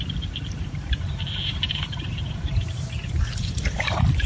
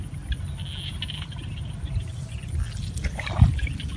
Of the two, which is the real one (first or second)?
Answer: second